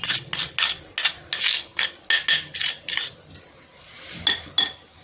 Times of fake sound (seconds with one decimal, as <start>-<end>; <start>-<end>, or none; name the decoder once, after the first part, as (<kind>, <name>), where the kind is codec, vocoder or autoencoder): none